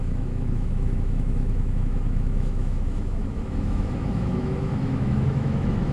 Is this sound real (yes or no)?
no